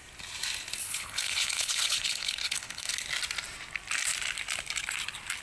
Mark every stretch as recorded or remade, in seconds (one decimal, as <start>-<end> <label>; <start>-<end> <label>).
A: 0.0-0.8 recorded; 0.8-2.9 remade; 2.9-5.4 recorded